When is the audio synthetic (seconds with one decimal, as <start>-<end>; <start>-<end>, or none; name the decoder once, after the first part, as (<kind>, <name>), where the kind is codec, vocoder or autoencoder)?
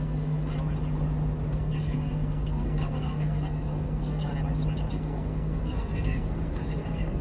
0.0-0.5 (codec, SNAC); 1.5-4.3; 4.9-7.2